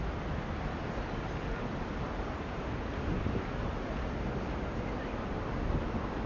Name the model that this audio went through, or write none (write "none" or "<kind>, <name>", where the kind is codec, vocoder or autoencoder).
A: none